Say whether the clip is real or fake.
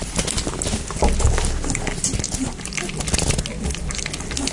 real